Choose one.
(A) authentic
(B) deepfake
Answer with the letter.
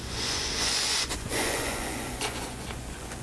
B